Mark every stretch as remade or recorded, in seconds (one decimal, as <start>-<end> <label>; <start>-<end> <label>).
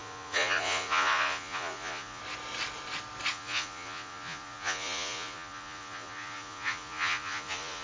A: 0.0-2.2 remade; 2.2-3.3 recorded; 3.3-7.8 remade